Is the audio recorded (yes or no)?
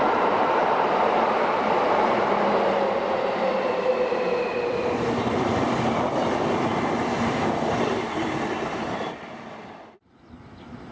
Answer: no